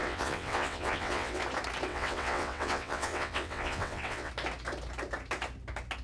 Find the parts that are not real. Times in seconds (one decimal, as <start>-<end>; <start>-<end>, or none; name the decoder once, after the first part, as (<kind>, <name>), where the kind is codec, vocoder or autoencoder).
0.0-1.4 (vocoder, WaveNeXt); 1.9-4.3